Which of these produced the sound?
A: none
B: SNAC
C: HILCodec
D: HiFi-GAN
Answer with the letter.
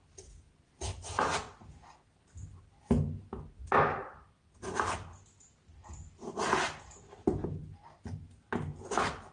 A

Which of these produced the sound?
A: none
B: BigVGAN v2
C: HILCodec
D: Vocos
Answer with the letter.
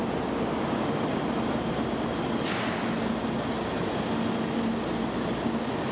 A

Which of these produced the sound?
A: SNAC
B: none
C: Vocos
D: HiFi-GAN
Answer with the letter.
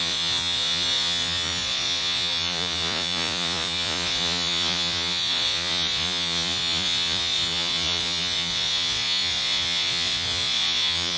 C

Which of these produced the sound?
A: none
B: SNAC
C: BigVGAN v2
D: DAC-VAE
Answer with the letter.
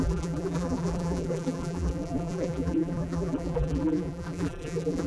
C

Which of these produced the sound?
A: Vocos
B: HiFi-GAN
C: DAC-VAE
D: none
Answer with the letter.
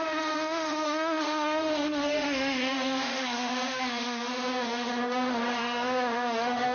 C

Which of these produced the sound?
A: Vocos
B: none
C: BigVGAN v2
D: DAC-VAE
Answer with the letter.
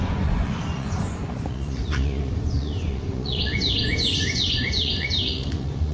A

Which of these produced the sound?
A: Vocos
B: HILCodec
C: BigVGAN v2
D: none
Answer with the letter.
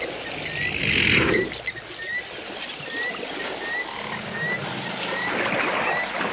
D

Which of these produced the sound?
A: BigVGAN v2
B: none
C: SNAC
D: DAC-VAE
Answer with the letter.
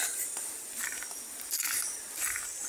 A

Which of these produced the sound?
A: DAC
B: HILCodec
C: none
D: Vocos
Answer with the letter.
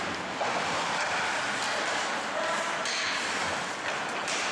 C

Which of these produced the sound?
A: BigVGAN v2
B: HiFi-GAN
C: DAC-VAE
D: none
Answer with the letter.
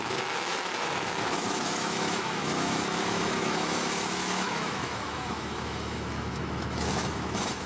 C